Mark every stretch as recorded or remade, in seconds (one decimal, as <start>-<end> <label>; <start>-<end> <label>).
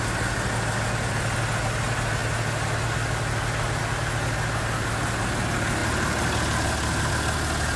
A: 0.0-7.8 recorded